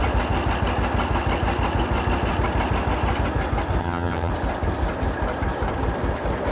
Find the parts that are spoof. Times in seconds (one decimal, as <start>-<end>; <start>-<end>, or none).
3.8-4.3